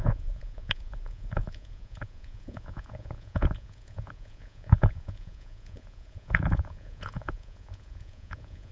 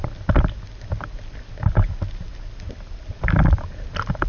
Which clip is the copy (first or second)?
first